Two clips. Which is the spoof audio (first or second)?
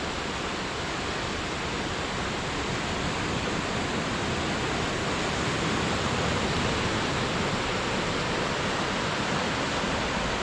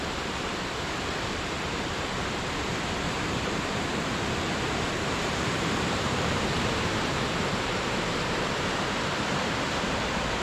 second